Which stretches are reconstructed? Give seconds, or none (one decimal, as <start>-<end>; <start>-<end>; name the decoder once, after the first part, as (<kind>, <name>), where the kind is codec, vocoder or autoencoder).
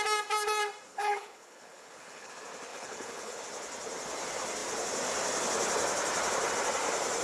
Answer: 0.9-2.3 (codec, HILCodec); 2.7-3.4